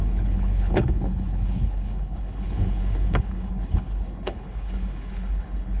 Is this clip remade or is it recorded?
remade